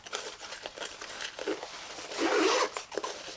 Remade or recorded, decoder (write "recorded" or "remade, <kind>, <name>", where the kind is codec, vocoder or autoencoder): recorded